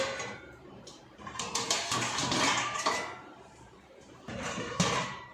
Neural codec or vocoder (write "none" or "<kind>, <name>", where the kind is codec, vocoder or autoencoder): vocoder, BigVGAN v2